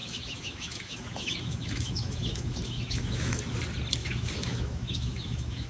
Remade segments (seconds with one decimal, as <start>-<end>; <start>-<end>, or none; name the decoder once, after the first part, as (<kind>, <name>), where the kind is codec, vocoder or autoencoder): 0.0-3.4 (autoencoder, DAC-VAE); 4.0-5.7